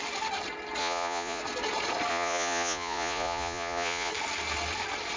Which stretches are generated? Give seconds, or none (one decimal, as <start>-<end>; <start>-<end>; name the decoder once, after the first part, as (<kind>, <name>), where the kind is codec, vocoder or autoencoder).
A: 0.8-1.4 (vocoder, Vocos); 2.1-4.1